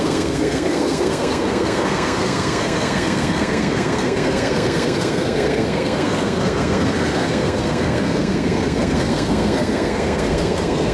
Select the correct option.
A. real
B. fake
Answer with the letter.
B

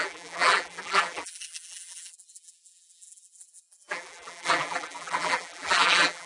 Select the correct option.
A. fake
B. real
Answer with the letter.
A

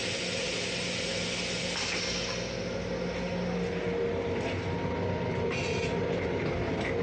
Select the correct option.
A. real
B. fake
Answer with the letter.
A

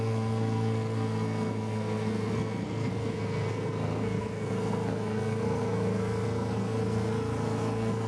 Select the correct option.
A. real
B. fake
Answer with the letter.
B